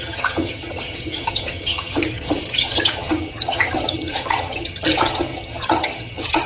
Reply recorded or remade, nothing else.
remade